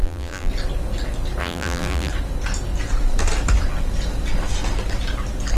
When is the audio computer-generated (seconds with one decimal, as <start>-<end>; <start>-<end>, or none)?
0.0-0.5; 1.4-2.1